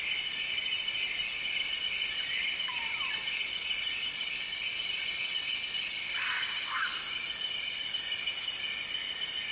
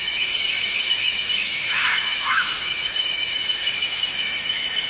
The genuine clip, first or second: first